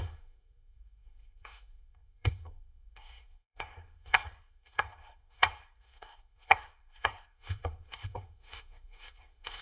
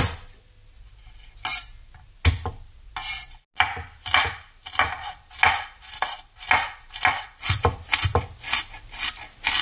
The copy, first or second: first